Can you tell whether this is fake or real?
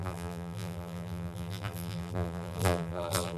fake